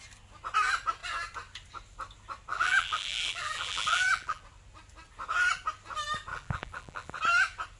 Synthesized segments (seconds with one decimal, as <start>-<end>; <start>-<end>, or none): 2.5-4.4; 6.3-7.2